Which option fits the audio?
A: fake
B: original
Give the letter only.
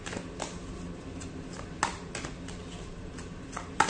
B